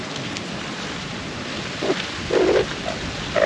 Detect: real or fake fake